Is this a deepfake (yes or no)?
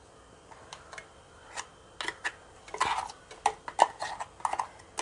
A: no